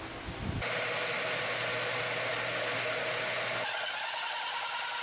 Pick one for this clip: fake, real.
real